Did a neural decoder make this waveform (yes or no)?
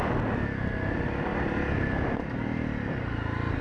no